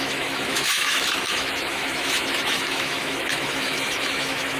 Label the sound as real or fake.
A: fake